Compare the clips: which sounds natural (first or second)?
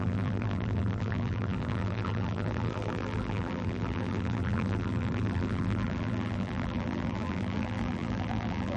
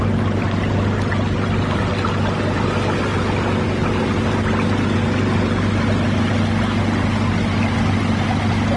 second